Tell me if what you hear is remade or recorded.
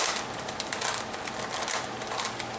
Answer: recorded